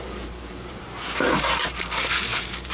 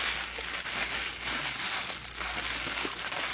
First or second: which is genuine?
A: second